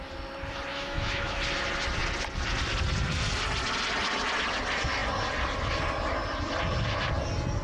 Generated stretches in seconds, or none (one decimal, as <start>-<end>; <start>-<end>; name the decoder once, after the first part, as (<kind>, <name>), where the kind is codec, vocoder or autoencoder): 0.7-1.4 (autoencoder, DAC-VAE)